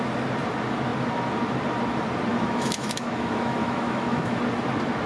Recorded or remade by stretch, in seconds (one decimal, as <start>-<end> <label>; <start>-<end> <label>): 0.0-2.3 recorded; 2.3-4.4 remade; 4.4-5.1 recorded